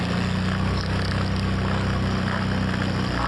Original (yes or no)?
yes